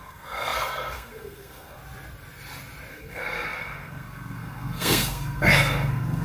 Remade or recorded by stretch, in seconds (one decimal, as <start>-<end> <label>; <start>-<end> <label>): 0.0-1.8 remade; 1.8-2.9 recorded; 2.9-6.2 remade